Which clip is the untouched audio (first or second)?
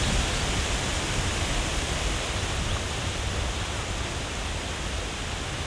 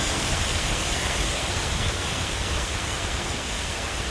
first